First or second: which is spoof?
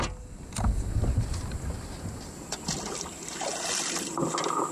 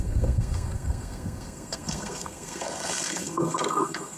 second